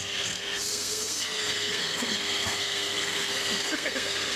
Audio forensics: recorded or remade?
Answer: remade